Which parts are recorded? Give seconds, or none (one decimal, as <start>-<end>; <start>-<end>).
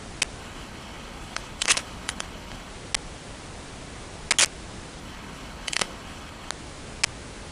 0.0-0.4; 2.7-5.0; 6.5-7.5